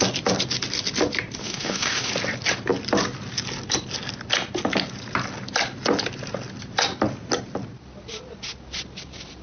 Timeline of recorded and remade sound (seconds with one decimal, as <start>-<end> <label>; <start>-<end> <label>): 0.0-1.4 recorded; 1.4-2.1 remade; 2.1-9.4 recorded